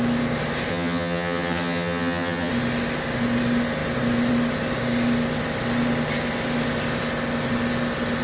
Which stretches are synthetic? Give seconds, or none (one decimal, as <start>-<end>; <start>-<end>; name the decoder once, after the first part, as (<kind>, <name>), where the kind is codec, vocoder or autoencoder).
0.7-2.5 (vocoder, HiFi-GAN)